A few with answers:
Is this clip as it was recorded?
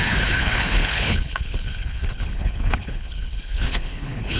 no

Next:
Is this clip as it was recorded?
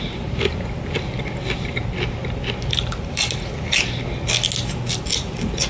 yes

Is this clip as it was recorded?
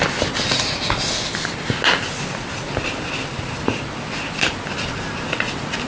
yes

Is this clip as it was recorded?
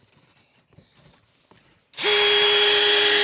yes